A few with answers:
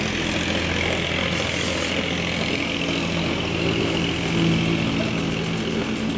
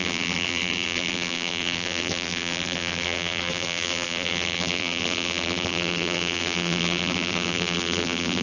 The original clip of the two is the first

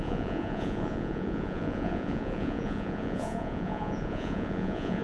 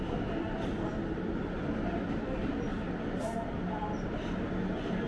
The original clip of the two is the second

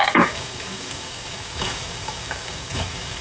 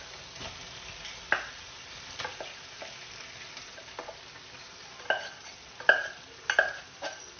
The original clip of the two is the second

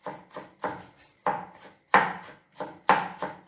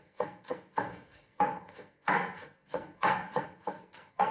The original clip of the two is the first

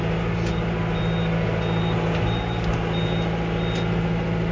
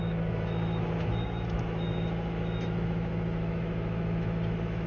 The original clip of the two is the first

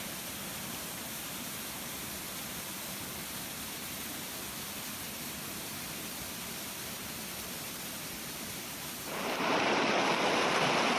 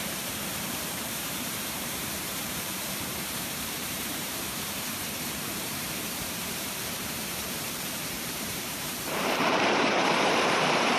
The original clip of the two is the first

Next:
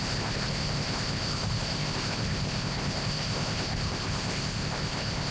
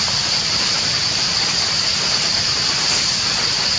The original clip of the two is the second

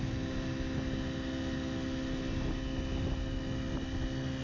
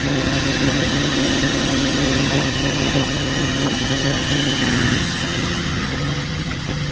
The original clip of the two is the first